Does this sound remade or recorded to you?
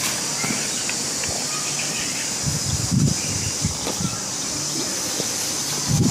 recorded